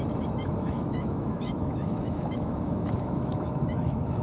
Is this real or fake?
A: fake